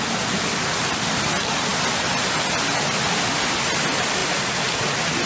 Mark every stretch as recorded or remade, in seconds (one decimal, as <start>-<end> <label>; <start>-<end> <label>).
0.0-5.3 recorded